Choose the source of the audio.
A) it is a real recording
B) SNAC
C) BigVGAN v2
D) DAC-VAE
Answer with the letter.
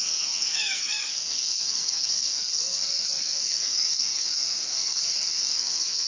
B